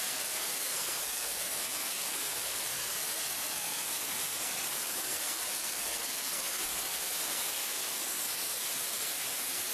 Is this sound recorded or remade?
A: remade